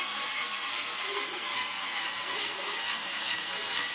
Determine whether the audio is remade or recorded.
remade